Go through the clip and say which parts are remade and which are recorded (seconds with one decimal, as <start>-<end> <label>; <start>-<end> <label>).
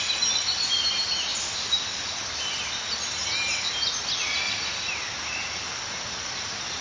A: 0.0-6.8 recorded